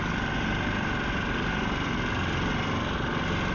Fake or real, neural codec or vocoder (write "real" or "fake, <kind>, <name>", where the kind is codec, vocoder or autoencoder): real